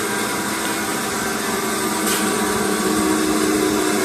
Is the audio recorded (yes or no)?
yes